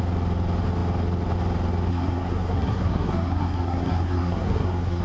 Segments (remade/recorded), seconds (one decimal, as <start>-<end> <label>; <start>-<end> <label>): 0.0-1.9 recorded; 1.9-5.0 remade